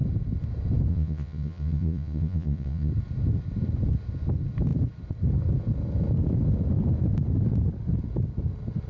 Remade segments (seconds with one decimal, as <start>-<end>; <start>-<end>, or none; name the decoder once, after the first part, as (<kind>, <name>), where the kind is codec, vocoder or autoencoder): 0.9-2.9 (vocoder, Vocos)